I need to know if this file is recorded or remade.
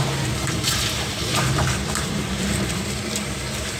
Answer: remade